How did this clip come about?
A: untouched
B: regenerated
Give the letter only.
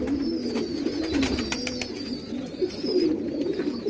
A